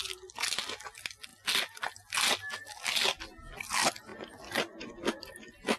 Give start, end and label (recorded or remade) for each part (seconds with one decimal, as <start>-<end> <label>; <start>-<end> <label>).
0.0-5.8 recorded